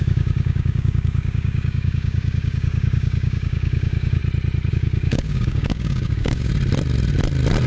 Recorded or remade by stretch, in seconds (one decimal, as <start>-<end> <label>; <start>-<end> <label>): 0.0-4.2 remade; 4.2-4.7 recorded; 4.7-6.5 remade; 6.5-7.7 recorded